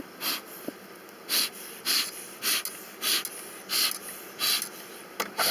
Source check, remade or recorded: recorded